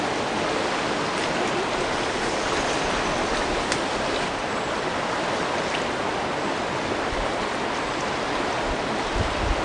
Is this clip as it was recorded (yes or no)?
yes